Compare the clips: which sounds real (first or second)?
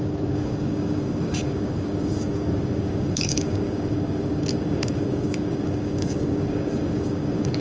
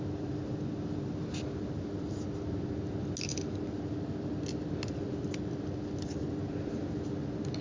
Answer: second